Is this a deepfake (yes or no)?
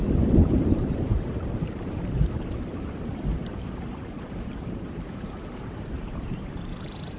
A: yes